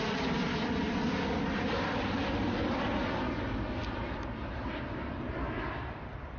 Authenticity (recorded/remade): recorded